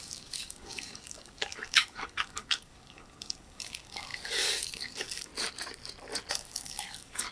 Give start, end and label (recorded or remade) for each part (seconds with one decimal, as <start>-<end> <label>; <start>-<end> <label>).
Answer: 0.0-5.3 remade; 5.3-6.3 recorded; 6.3-7.3 remade